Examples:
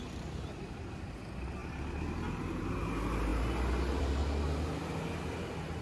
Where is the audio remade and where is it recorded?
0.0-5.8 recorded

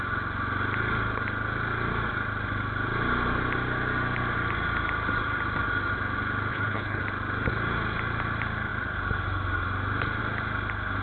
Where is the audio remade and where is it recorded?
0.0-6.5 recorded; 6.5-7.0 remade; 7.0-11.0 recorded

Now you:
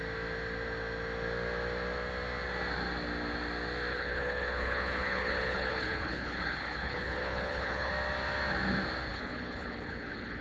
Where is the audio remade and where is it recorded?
0.0-3.9 recorded; 3.9-7.9 remade; 7.9-9.1 recorded; 9.1-10.4 remade

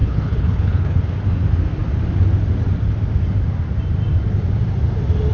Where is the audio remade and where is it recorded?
0.0-1.0 remade; 1.0-5.3 recorded